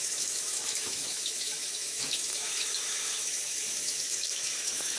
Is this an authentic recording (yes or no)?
no